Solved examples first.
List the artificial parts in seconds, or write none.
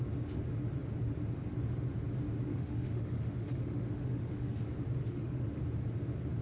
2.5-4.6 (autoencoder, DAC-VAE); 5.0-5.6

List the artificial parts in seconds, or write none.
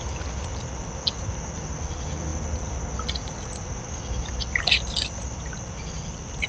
none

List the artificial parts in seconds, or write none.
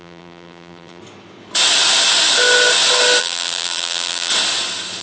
0.0-1.0 (vocoder, BigVGAN v2); 3.2-4.3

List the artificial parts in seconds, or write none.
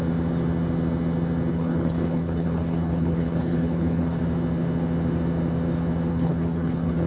1.5-4.2 (codec, HILCodec); 6.1-7.1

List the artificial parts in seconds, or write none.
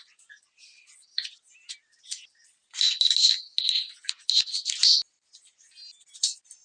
0.0-2.6 (vocoder, BigVGAN v2); 5.1-6.6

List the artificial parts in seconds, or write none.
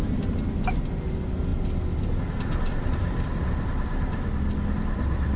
none